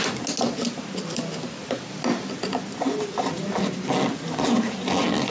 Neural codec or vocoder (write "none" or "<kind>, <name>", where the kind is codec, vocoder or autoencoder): none